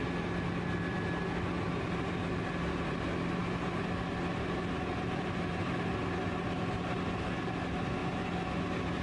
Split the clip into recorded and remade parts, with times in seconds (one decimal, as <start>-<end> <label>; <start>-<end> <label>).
0.0-9.0 recorded